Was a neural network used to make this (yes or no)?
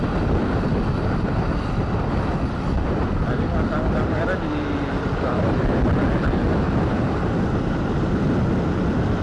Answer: no